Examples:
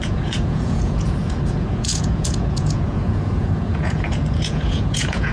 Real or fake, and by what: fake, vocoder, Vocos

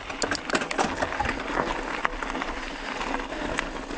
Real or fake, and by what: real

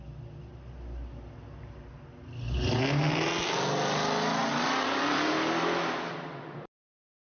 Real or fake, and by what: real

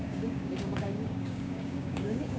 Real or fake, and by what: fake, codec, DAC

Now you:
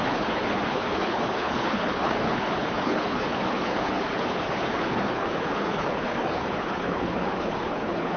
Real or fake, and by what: fake, codec, HILCodec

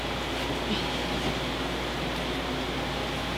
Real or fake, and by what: real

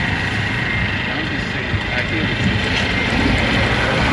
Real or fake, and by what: real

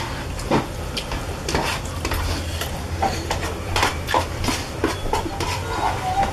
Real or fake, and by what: real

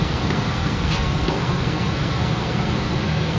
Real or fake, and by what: fake, codec, SNAC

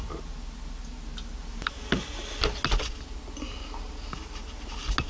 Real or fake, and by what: real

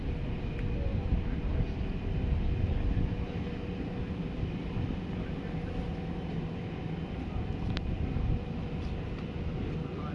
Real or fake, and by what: real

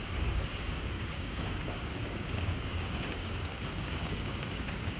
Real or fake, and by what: fake, codec, DAC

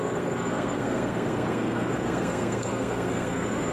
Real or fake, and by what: fake, codec, SNAC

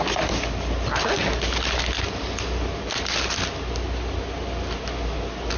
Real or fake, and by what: real